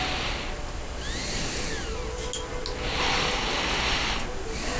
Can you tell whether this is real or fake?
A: real